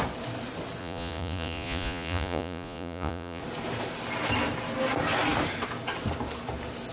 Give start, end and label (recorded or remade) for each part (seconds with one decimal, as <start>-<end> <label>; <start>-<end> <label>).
0.0-0.8 recorded; 0.8-3.4 remade; 3.4-6.9 recorded